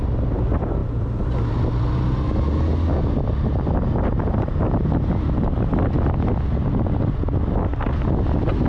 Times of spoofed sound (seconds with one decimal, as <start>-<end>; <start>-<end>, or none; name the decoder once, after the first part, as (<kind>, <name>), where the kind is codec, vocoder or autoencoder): none